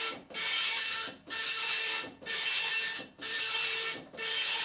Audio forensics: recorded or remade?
remade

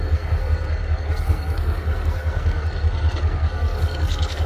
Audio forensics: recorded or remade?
remade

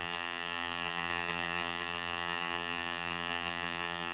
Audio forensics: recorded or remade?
remade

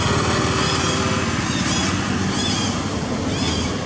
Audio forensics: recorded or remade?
recorded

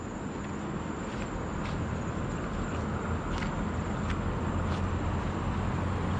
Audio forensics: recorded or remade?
recorded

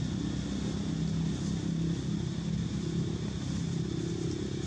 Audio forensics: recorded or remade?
recorded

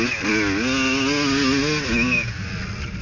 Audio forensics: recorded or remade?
recorded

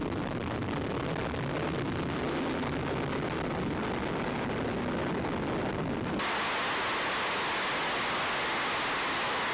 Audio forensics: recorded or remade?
recorded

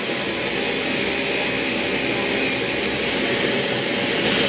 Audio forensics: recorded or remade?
recorded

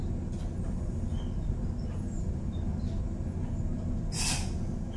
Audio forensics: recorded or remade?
recorded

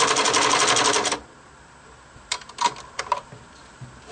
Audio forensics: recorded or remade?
recorded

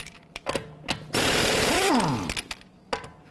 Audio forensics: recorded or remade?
recorded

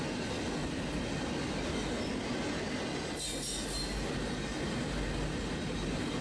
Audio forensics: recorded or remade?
recorded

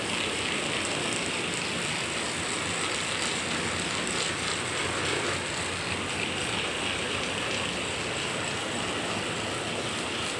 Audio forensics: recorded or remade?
recorded